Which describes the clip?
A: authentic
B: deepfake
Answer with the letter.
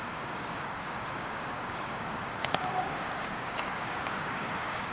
B